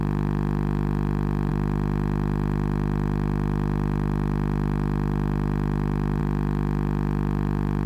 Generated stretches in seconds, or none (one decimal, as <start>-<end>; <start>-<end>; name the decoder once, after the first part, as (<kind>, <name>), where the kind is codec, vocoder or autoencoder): none

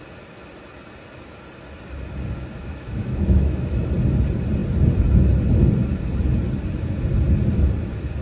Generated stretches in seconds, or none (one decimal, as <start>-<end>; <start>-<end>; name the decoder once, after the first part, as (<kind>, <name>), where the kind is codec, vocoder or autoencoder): 2.5-3.9 (autoencoder, DAC-VAE)